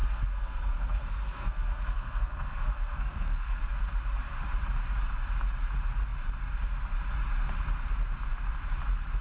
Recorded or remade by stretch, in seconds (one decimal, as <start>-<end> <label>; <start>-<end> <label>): 0.0-3.7 remade; 3.7-9.2 recorded